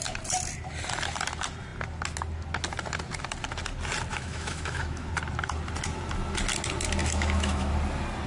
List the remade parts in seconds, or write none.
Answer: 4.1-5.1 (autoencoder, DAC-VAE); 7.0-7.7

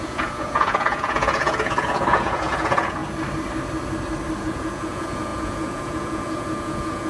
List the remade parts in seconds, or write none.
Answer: 0.0-3.0 (vocoder, Vocos); 4.4-7.1

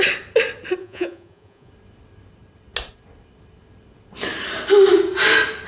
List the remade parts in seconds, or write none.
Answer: 0.8-1.7 (vocoder, Vocos)

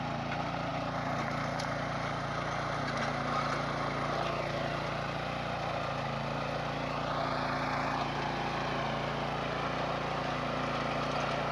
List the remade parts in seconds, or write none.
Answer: none

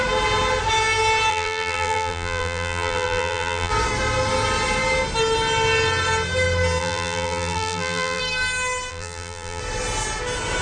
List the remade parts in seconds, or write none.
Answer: 1.3-3.7 (vocoder, BigVGAN v2); 6.8-8.2; 8.9-9.6

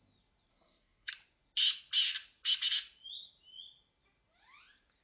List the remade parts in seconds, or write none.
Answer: 0.5-1.1 (codec, SNAC)

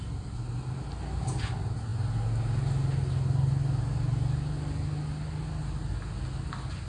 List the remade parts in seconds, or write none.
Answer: none

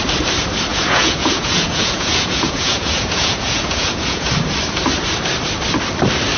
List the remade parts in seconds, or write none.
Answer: 0.7-4.3 (vocoder, Vocos)